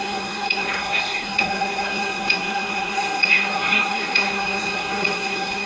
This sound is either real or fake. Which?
fake